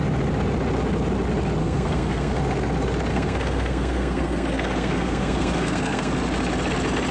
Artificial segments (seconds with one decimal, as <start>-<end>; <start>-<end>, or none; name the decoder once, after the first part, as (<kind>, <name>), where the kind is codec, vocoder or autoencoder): 1.6-2.4 (codec, SNAC); 3.1-6.1